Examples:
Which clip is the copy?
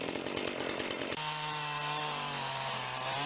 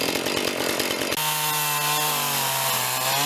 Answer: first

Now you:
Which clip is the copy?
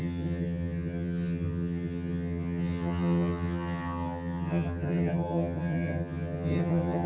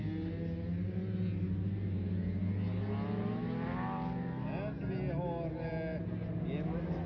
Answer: first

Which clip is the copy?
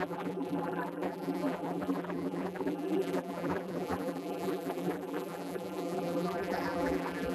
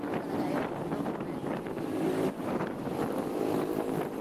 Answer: first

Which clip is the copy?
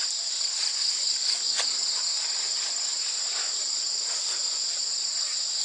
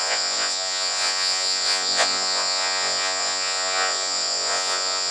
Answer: second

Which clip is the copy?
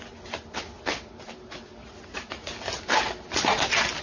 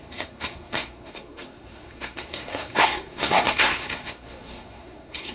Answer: second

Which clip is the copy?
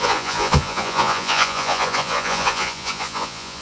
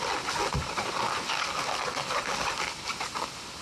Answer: first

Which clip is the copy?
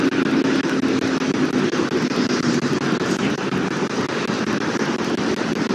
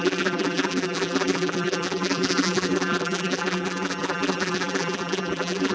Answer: second